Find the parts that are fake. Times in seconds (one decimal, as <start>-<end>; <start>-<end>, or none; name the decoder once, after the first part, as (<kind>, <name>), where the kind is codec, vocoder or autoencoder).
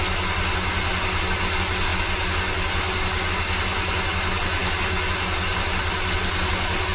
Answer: none